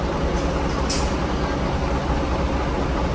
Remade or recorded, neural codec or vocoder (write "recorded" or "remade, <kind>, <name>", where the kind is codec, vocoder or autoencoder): recorded